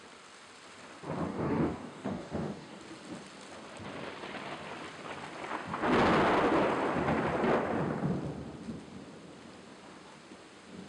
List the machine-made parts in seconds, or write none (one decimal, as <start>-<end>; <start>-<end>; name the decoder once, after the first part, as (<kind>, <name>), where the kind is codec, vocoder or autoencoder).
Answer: 1.3-2.8 (codec, DAC)